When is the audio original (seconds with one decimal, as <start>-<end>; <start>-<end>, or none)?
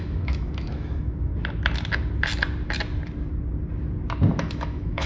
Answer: 1.3-4.4